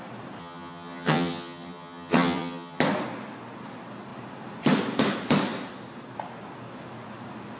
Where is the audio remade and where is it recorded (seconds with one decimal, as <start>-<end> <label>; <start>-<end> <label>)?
0.0-0.4 recorded; 0.4-2.8 remade; 2.8-7.6 recorded